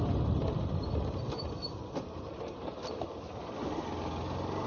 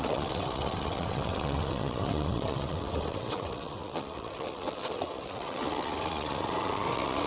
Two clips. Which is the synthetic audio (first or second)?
second